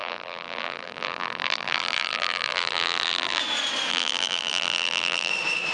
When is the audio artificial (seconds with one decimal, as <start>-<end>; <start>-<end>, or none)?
0.0-3.4; 3.9-5.3